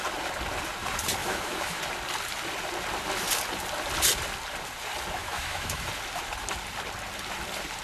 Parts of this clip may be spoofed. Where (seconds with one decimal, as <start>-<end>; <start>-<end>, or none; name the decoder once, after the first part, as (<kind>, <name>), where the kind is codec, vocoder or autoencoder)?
1.2-1.8 (autoencoder, DAC-VAE); 5.2-5.9